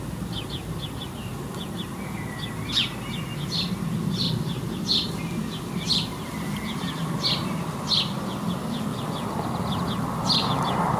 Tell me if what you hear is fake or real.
real